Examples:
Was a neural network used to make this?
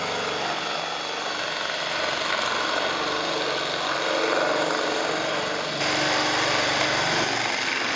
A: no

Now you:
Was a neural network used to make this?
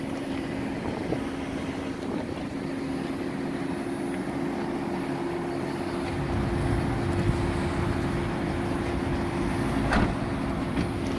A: no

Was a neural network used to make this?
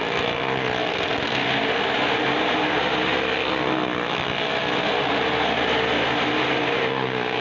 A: no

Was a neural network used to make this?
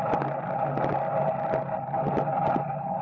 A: no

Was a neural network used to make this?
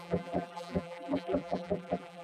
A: yes